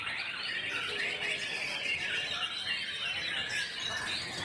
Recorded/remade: recorded